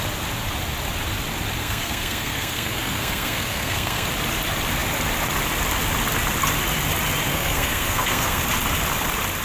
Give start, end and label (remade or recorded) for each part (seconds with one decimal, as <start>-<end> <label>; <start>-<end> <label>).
0.0-1.6 recorded; 1.6-4.1 remade; 4.1-7.3 recorded; 7.3-8.4 remade; 8.4-9.4 recorded